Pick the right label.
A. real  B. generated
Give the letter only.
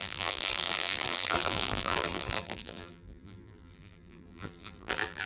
B